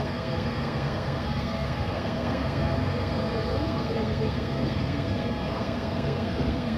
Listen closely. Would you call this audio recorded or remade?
remade